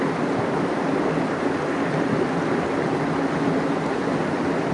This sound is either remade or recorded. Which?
recorded